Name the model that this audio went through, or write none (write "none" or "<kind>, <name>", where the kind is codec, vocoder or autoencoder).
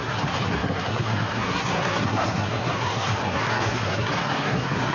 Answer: codec, SNAC